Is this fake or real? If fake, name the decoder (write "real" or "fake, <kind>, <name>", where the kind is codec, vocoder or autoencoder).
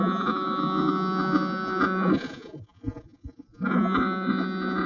fake, vocoder, Vocos